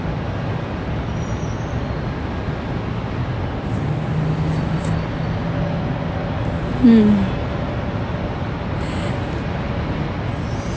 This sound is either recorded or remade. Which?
recorded